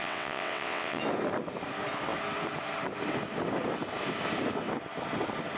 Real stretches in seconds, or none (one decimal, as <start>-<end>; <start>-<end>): 1.0-5.6